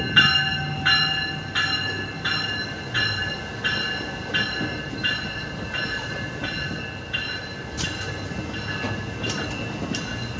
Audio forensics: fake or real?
real